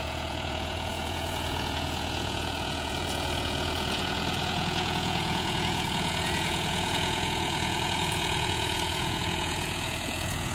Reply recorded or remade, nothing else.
remade